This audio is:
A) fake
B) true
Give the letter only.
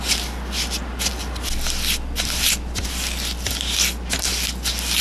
B